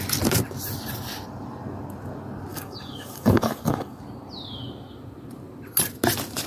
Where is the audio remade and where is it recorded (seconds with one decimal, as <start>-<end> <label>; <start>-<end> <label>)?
0.0-2.5 recorded; 2.5-4.0 remade; 4.0-6.5 recorded